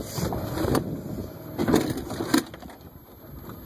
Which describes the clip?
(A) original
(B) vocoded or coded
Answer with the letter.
A